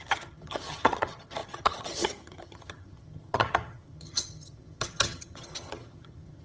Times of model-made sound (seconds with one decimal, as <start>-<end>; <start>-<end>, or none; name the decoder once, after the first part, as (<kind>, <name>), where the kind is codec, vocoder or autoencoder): 0.0-6.4 (vocoder, HiFi-GAN)